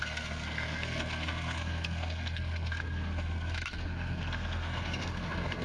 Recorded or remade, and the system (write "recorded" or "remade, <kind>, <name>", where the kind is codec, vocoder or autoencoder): remade, codec, SNAC